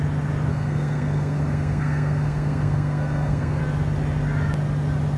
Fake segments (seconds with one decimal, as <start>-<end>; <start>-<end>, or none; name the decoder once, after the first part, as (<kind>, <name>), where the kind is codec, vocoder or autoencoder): 0.5-3.6 (codec, SNAC)